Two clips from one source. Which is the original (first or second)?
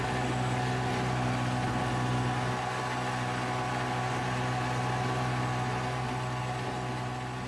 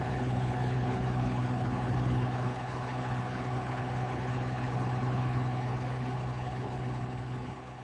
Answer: first